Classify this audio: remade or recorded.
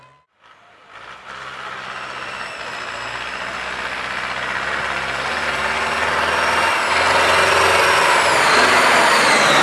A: recorded